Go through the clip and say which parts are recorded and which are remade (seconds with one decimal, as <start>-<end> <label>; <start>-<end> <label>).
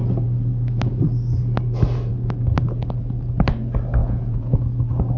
0.0-4.0 recorded; 4.0-4.6 remade; 4.6-5.2 recorded